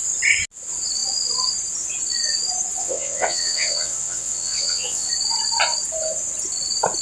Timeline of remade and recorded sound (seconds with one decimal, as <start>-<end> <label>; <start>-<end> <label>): 0.0-2.8 recorded; 2.8-5.1 remade; 5.1-7.0 recorded